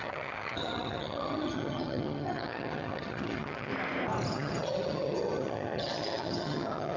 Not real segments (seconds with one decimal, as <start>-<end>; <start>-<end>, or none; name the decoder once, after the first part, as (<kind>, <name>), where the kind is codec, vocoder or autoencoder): 0.0-3.7 (vocoder, HiFi-GAN); 4.3-7.0